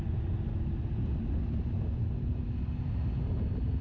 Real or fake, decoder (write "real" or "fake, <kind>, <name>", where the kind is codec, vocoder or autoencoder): real